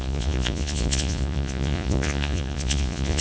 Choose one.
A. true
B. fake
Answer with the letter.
B